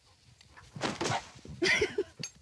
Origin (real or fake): real